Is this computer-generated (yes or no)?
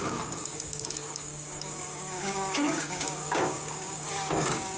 yes